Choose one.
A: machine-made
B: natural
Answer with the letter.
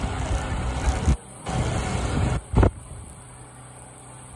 B